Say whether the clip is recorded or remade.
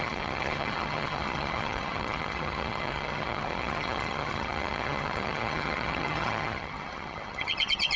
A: remade